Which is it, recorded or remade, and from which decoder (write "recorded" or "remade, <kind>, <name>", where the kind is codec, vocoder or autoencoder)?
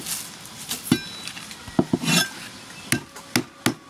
recorded